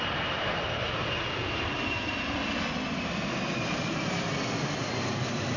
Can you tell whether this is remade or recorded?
recorded